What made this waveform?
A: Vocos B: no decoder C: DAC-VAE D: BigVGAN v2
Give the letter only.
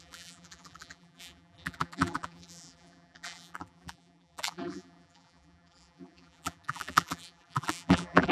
D